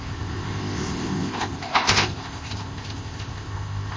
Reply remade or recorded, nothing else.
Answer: remade